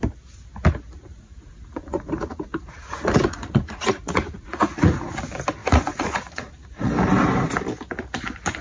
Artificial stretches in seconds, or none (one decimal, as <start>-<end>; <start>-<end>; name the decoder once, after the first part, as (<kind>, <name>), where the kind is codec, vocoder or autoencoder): 1.1-5.1 (vocoder, Vocos); 5.6-6.9